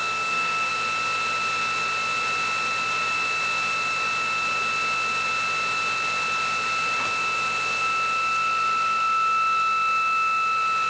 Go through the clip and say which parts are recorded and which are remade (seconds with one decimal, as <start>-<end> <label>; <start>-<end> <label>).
0.0-0.7 remade; 0.7-10.9 recorded